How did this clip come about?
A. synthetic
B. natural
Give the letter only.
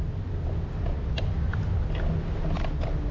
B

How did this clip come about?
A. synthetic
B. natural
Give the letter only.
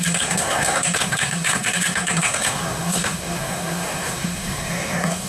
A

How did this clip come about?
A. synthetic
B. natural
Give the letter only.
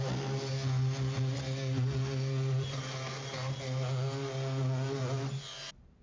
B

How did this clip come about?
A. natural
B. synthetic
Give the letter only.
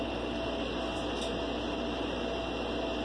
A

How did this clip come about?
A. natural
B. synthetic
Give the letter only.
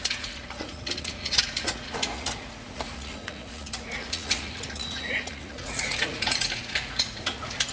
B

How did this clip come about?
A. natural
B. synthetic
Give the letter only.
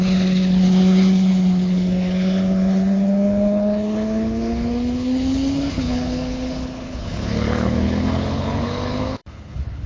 B